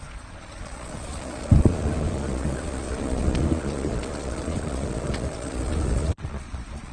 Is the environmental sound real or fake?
fake